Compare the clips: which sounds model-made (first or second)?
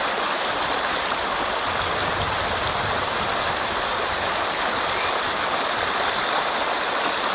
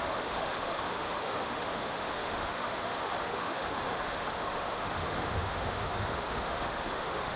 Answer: second